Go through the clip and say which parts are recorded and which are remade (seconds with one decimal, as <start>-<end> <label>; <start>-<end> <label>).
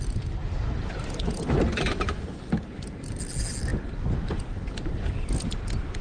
0.0-6.0 recorded